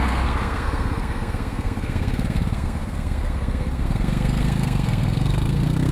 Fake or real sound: fake